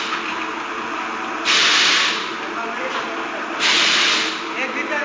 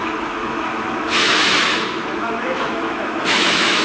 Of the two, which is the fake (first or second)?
second